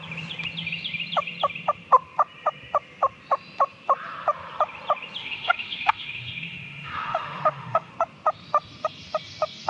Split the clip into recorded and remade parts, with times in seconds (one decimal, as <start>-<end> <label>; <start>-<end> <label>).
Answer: 0.0-5.2 recorded; 5.2-7.9 remade; 7.9-9.7 recorded